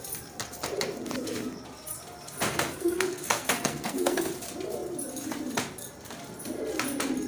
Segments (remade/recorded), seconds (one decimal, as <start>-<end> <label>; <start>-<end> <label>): 0.0-2.5 recorded; 2.5-4.3 remade; 4.3-7.3 recorded